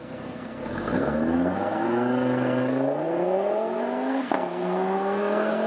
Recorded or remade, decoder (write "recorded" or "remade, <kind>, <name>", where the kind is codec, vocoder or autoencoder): remade, codec, SNAC